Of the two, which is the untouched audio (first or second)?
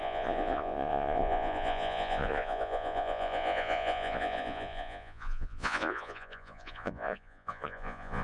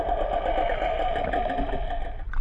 second